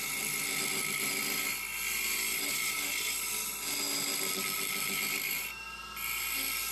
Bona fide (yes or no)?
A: yes